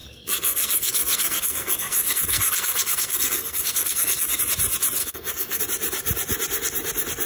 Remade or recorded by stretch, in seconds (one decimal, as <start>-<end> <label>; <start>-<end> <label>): 0.0-4.4 remade; 4.4-5.0 recorded; 5.0-5.6 remade; 5.6-7.3 recorded